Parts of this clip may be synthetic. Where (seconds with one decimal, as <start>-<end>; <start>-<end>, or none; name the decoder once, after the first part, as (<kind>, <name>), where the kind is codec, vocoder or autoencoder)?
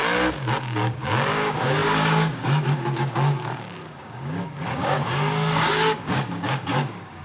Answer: 0.6-7.2 (codec, DAC)